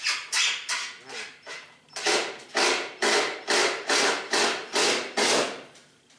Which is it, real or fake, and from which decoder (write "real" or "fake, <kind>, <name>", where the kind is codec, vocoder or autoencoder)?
real